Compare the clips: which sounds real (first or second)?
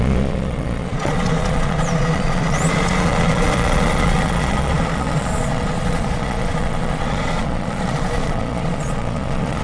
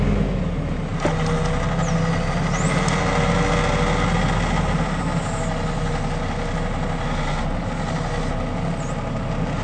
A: second